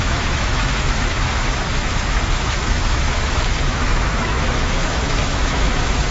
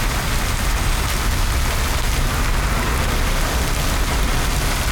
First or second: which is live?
second